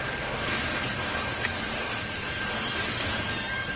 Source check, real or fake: real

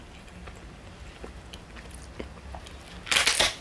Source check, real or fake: real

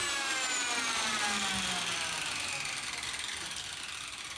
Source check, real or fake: real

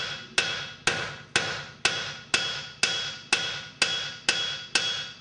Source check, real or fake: real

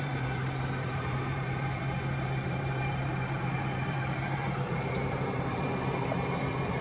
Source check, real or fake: fake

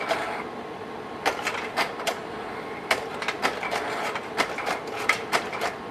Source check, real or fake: real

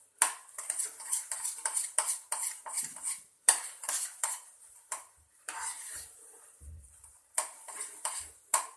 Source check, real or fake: fake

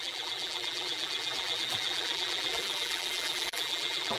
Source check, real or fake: fake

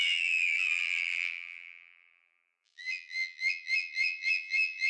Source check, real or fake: fake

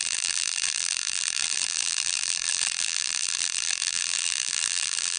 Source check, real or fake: fake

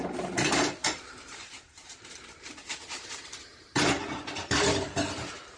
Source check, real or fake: fake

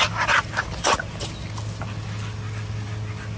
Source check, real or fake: real